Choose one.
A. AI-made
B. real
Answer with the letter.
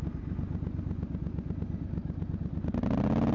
B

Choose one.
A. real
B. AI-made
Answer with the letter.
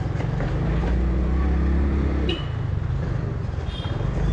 A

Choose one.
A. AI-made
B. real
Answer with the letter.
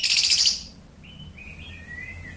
B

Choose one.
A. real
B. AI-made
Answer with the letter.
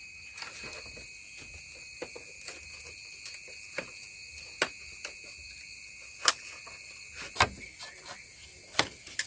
A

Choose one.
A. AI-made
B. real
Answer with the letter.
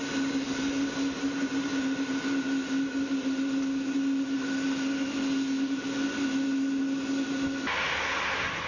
B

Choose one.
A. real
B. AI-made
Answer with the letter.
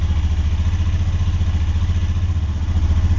A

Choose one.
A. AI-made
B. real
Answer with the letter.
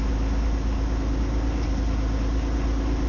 B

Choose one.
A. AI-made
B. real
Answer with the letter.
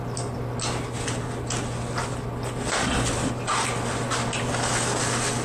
B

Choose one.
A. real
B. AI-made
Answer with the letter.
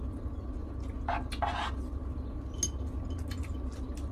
A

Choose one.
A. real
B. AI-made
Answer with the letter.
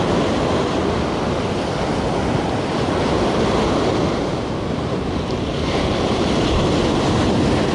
A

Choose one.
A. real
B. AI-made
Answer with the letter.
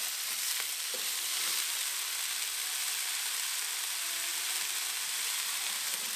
A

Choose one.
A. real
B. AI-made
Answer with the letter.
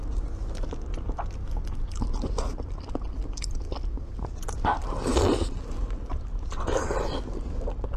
A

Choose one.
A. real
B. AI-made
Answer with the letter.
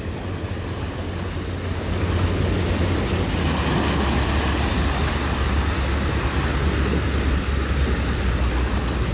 A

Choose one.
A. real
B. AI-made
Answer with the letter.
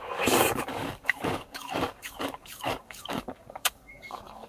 B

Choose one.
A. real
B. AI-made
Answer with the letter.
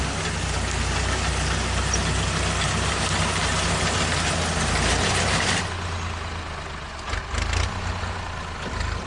A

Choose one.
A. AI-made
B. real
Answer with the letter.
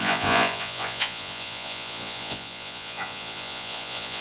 A